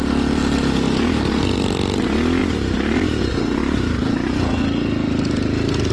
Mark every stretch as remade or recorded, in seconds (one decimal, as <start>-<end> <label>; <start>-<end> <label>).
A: 0.0-0.4 recorded; 0.4-1.0 remade; 1.0-2.4 recorded; 2.4-3.2 remade; 3.2-3.6 recorded; 3.6-4.3 remade; 4.3-5.9 recorded